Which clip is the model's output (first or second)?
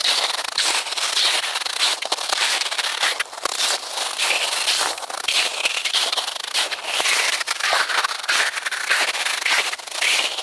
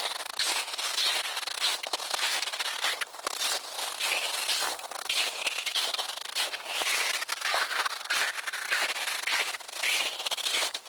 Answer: first